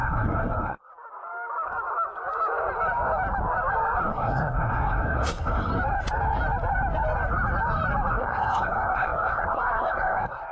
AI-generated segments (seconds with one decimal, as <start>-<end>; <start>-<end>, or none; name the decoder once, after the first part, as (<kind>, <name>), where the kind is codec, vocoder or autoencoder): 0.0-0.9 (codec, SNAC); 4.0-5.7; 8.1-10.5